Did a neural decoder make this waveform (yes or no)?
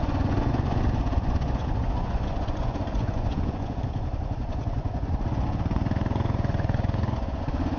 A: yes